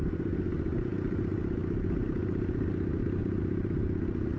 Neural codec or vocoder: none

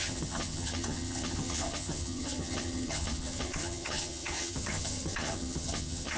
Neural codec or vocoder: vocoder, HiFi-GAN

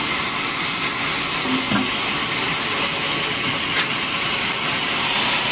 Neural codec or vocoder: none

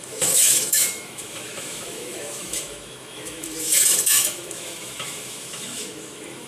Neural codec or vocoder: autoencoder, DAC-VAE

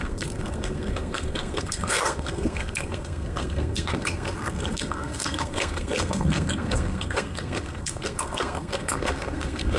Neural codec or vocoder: codec, SNAC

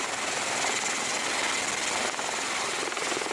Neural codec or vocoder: none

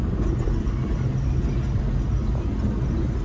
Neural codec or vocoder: none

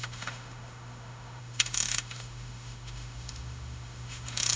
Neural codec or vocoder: autoencoder, DAC-VAE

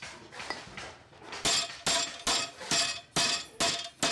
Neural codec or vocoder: none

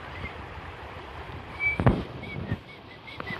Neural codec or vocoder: vocoder, BigVGAN v2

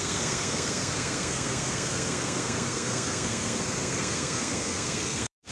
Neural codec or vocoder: codec, SNAC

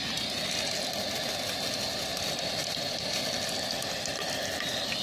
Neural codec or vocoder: none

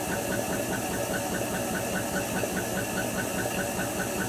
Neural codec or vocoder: none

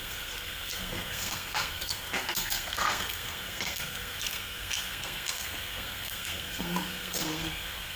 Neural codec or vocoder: codec, SNAC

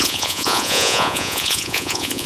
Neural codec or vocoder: vocoder, Vocos